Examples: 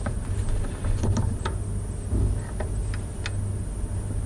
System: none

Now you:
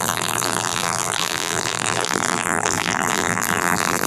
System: vocoder, BigVGAN v2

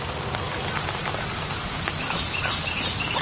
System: none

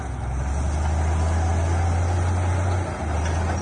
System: none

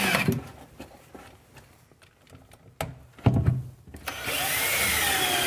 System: none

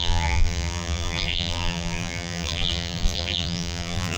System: vocoder, BigVGAN v2